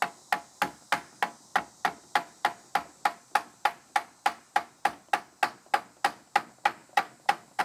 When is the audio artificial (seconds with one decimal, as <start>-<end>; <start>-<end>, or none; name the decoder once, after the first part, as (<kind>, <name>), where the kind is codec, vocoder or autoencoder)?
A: 1.5-5.1 (vocoder, BigVGAN v2); 6.8-7.6